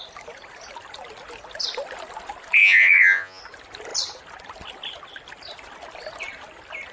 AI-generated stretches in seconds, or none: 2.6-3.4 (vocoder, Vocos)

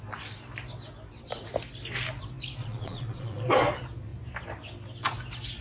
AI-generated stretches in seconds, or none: 2.6-3.5 (vocoder, Vocos)